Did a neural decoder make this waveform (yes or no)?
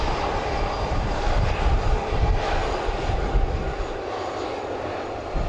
no